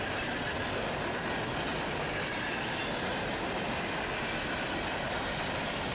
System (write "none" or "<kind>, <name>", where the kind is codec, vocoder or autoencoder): none